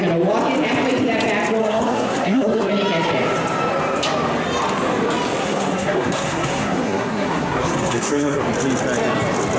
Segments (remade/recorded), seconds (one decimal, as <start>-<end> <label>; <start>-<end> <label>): 0.0-1.6 recorded; 1.6-2.7 remade; 2.7-5.4 recorded; 5.4-8.4 remade; 8.4-9.6 recorded